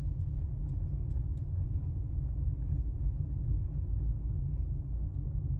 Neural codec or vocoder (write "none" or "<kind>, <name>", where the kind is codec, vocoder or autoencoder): none